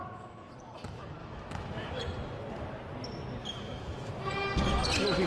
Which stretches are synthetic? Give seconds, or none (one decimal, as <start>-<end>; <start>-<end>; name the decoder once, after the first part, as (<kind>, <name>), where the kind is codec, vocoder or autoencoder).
0.0-0.5 (autoencoder, DAC-VAE); 1.2-2.0; 3.4-4.1